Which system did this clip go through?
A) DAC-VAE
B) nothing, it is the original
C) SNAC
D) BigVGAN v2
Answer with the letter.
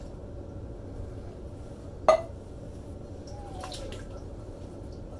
B